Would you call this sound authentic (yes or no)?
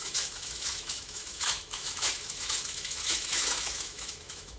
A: no